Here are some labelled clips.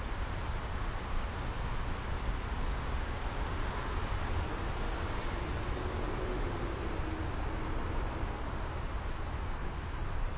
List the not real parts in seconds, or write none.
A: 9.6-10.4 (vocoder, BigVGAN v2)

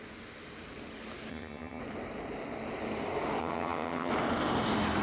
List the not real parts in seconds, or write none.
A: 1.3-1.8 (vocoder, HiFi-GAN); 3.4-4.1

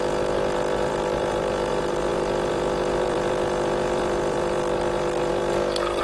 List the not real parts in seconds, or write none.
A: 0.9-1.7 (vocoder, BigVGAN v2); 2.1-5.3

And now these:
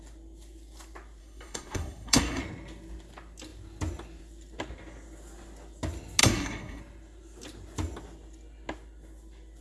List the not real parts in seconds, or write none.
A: 1.2-2.4 (codec, SNAC); 6.2-6.8

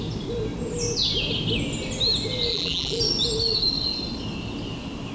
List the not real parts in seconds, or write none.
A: 2.5-3.0 (vocoder, BigVGAN v2)